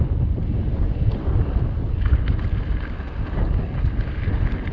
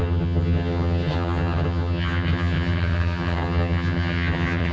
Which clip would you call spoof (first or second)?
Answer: second